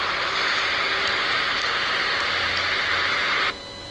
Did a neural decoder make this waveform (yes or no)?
no